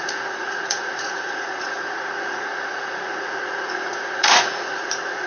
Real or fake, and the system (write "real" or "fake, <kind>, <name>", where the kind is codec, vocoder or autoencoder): fake, vocoder, Vocos